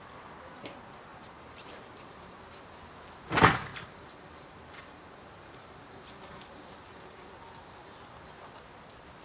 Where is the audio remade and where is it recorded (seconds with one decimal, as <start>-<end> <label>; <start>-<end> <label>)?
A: 0.0-1.1 recorded; 1.1-2.4 remade; 2.4-3.7 recorded; 3.7-7.5 remade; 7.5-9.2 recorded